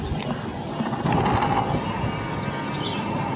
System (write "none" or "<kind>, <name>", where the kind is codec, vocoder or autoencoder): none